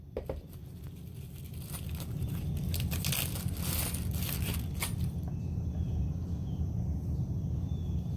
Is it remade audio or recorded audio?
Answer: recorded